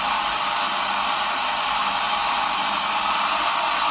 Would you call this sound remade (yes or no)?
no